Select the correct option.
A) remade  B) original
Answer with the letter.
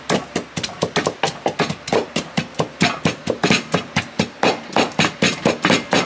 B